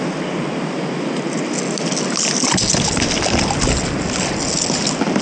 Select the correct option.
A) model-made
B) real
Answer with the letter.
B